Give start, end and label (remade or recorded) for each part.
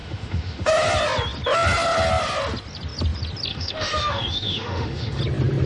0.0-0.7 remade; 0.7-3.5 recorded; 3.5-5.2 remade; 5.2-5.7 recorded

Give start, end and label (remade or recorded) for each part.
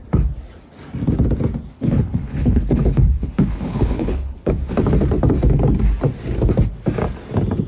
0.0-1.7 recorded; 1.7-4.5 remade; 4.5-7.7 recorded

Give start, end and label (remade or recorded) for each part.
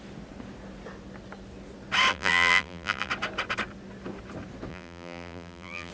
0.0-2.1 recorded; 2.1-3.1 remade; 3.1-4.7 recorded; 4.7-5.9 remade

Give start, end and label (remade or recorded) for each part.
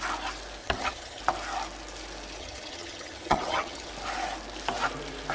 0.0-0.6 recorded; 0.6-1.2 remade; 1.2-2.4 recorded; 2.4-3.9 remade; 3.9-5.3 recorded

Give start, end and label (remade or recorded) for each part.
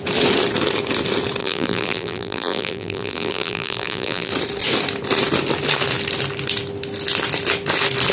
0.0-1.4 recorded; 1.4-4.3 remade; 4.3-8.1 recorded